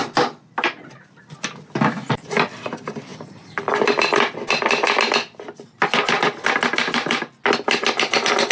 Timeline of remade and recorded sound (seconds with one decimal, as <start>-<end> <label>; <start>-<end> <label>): 0.0-8.5 recorded